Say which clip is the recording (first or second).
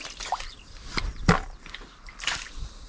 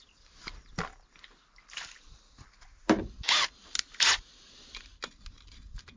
second